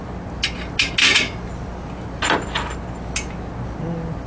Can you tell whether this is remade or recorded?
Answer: recorded